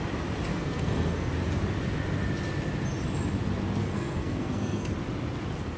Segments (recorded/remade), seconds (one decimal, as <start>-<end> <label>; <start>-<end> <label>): 0.0-0.5 recorded; 0.5-1.3 remade; 1.3-3.8 recorded; 3.8-4.9 remade; 4.9-5.8 recorded